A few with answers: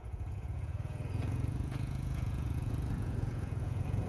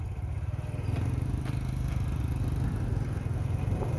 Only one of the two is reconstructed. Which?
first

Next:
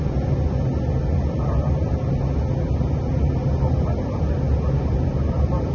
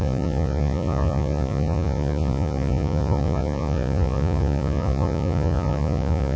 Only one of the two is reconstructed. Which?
second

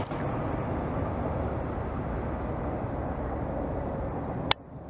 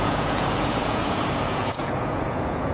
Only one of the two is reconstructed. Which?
second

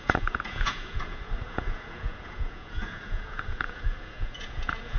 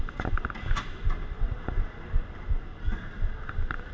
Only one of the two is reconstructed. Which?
first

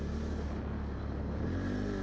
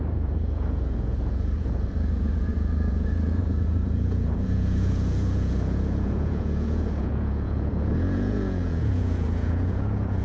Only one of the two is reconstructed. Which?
second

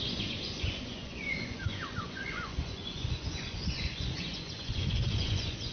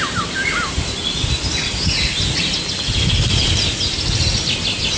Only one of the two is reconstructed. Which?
first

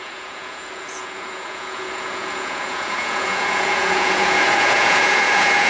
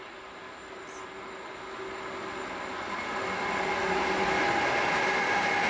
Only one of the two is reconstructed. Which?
first